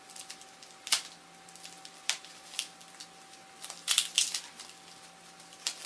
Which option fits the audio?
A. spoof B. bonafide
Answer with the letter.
B